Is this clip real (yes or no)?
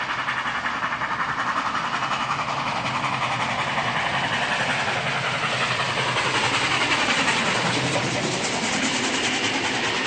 yes